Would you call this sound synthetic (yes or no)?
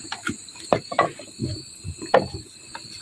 no